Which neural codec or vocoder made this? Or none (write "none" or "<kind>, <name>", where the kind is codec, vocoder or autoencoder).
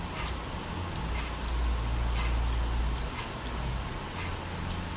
none